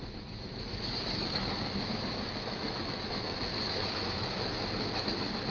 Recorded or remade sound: remade